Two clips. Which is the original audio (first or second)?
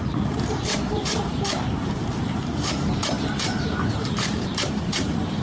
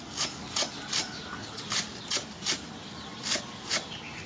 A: second